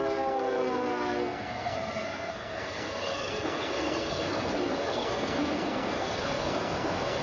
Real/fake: fake